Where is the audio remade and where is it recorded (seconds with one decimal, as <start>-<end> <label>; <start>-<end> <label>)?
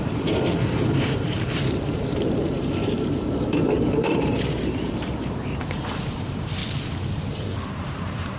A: 0.0-6.6 remade; 6.6-7.2 recorded; 7.2-8.4 remade